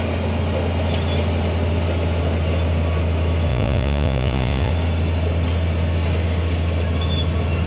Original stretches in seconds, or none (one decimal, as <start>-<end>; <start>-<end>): 0.0-3.5; 4.7-7.7